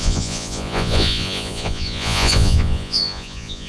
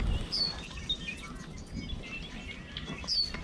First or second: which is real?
second